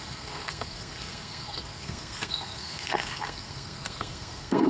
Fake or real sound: fake